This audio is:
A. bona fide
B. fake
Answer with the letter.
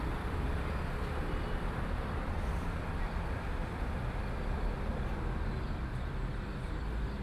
A